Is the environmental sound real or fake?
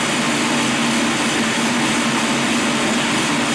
real